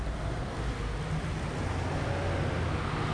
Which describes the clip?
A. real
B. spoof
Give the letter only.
A